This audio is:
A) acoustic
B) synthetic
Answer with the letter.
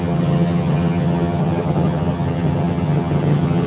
B